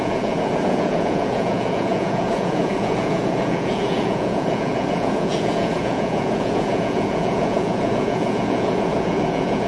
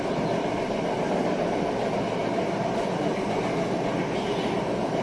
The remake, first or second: first